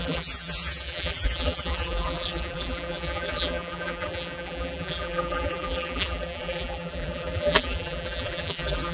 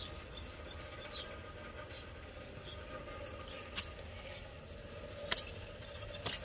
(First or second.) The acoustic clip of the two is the second